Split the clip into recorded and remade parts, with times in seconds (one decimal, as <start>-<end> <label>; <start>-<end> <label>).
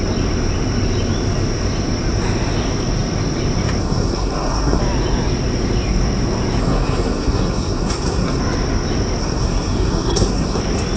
0.0-3.8 recorded; 3.8-4.8 remade; 4.8-6.6 recorded; 6.6-8.4 remade; 8.4-9.2 recorded; 9.2-10.6 remade; 10.6-11.0 recorded